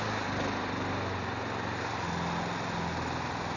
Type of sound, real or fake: real